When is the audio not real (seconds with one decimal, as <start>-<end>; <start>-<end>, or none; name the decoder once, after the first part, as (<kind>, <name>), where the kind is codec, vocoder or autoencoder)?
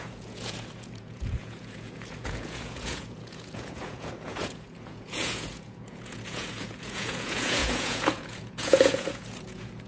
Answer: 0.0-9.9 (vocoder, Vocos)